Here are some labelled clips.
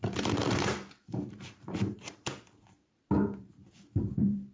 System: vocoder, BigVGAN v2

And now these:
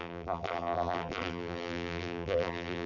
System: vocoder, BigVGAN v2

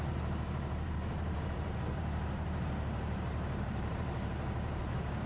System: vocoder, BigVGAN v2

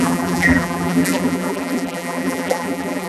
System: vocoder, BigVGAN v2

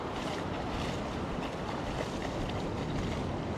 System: none